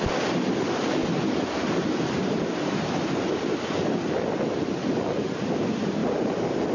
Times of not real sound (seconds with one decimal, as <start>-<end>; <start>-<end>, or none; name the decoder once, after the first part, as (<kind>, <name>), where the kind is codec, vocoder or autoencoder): 0.0-1.0 (vocoder, BigVGAN v2); 5.0-6.7